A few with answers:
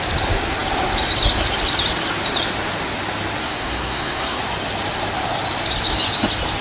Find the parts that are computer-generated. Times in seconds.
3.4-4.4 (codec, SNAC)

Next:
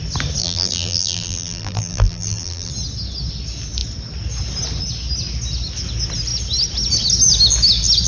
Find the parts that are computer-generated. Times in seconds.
0.4-2.7 (vocoder, BigVGAN v2)

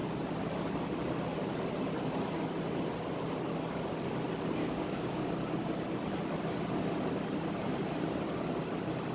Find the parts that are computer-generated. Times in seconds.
4.6-5.3 (codec, DAC)

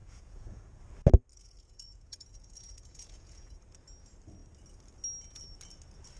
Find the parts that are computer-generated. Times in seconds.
0.0-0.8 (vocoder, Vocos); 1.3-3.6

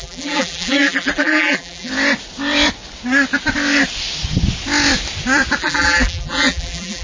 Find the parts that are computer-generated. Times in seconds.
0.0-1.9 (vocoder, BigVGAN v2); 5.6-7.0

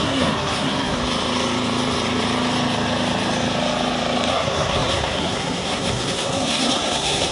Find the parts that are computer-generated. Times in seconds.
0.0-1.0 (codec, SNAC); 4.3-7.3